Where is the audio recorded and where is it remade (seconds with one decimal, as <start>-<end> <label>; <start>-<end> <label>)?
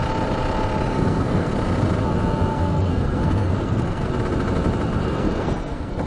0.0-0.9 recorded; 0.9-1.5 remade; 1.5-2.5 recorded; 2.5-4.1 remade; 4.1-5.0 recorded; 5.0-6.1 remade